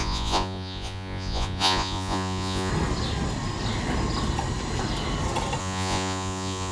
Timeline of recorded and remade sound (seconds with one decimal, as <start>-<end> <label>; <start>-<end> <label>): 0.0-2.7 remade; 2.7-5.6 recorded; 5.6-6.7 remade